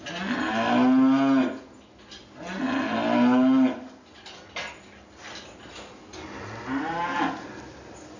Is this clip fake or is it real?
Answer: real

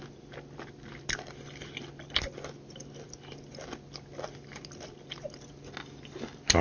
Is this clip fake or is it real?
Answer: real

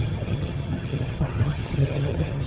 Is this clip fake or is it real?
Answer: fake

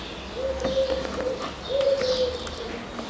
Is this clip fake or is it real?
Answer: real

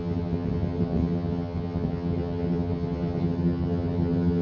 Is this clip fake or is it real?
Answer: fake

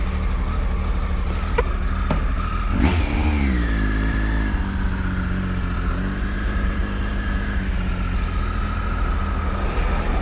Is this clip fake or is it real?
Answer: real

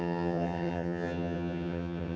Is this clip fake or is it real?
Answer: fake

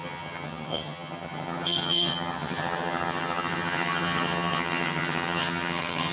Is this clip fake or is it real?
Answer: fake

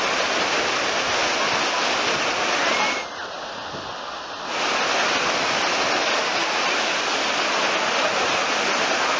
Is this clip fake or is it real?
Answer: real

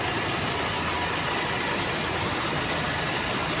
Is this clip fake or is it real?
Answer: real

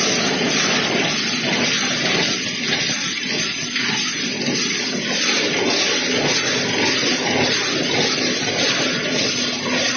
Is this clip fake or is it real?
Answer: real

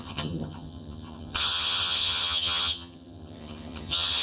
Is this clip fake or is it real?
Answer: fake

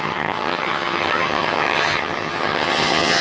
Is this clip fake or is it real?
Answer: fake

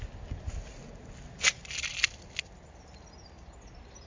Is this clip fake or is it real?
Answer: real